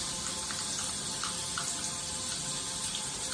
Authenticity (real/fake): real